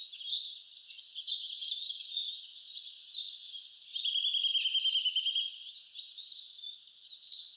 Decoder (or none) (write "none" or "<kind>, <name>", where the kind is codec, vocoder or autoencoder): none